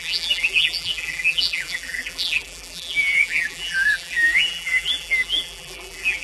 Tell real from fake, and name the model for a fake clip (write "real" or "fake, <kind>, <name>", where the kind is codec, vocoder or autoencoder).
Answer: fake, vocoder, BigVGAN v2